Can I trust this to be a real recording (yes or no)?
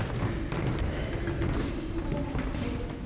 yes